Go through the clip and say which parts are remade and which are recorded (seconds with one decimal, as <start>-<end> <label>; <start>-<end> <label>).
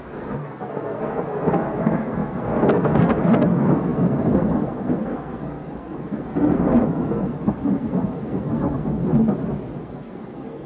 0.0-9.0 remade; 9.0-9.8 recorded; 9.8-10.7 remade